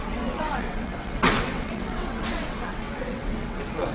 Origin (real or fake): fake